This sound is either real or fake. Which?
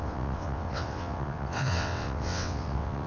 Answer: fake